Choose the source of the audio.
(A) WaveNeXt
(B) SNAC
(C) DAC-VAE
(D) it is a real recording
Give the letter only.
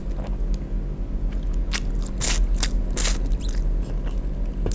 D